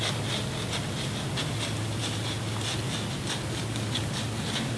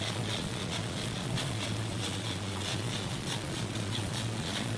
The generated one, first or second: second